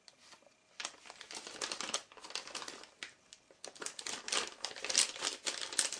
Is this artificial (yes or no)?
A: no